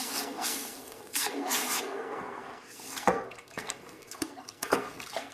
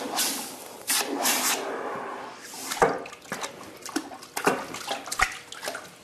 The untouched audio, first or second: second